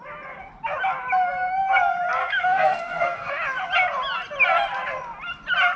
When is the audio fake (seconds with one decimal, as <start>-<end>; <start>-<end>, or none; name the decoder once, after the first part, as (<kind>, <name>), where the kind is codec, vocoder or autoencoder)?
2.2-3.3 (codec, SNAC)